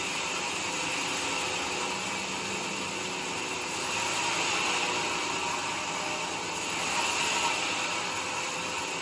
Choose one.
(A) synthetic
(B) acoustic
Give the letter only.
B